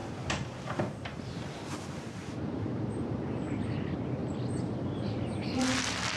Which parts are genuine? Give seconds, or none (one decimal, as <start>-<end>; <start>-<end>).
1.2-2.2; 3.2-6.2